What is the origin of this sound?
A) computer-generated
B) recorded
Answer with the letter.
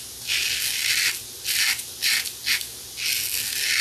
B